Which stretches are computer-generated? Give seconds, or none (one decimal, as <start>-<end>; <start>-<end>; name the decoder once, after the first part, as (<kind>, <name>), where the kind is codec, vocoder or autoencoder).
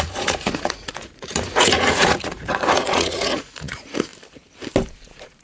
0.0-4.1 (vocoder, Vocos); 4.9-5.4